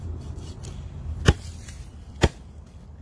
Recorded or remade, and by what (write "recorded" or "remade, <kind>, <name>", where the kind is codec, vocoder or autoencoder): remade, vocoder, BigVGAN v2